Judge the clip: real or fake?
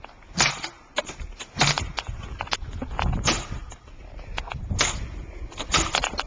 real